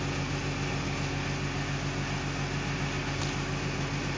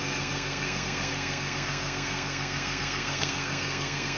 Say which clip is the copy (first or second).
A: second